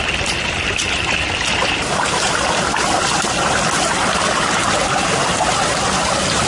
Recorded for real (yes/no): yes